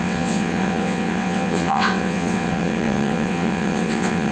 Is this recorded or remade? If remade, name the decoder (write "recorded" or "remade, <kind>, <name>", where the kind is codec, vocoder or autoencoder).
remade, vocoder, WaveNeXt